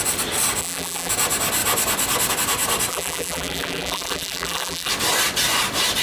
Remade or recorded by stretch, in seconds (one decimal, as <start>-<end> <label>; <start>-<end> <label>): 0.0-0.6 recorded; 0.6-1.1 remade; 1.1-2.9 recorded; 2.9-4.9 remade; 4.9-6.0 recorded